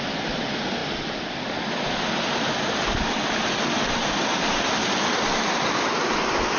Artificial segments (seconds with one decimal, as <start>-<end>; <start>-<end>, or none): none